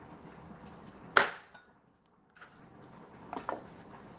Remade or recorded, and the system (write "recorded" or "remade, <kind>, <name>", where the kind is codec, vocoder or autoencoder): recorded